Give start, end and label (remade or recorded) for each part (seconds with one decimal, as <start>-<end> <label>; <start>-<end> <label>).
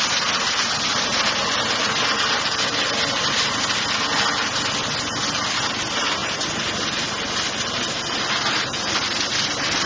0.0-9.9 recorded